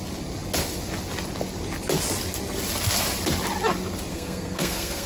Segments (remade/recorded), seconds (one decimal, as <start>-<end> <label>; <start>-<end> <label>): 0.0-4.1 recorded; 4.1-5.1 remade